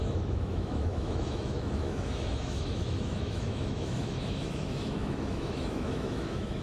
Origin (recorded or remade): remade